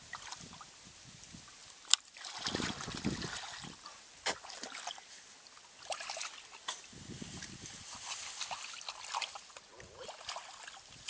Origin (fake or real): real